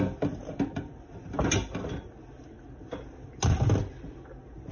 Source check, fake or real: real